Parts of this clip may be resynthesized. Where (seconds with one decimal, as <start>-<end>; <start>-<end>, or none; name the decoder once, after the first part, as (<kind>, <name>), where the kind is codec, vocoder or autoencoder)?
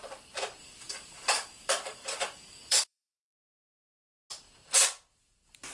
0.6-4.0 (codec, DAC)